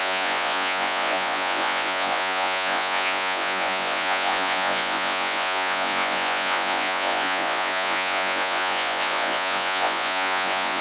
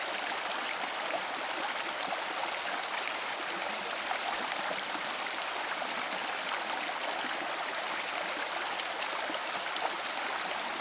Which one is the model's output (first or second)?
first